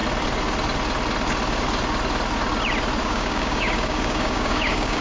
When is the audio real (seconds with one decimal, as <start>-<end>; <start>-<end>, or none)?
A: 0.0-3.0